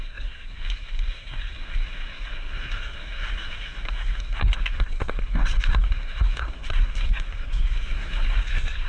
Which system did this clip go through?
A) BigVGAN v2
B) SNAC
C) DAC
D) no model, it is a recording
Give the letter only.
B